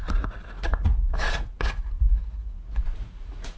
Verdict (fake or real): fake